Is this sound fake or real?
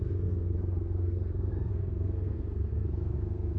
fake